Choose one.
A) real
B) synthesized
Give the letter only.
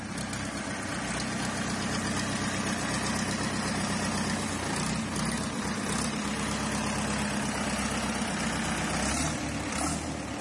A